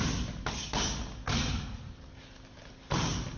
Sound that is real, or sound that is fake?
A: real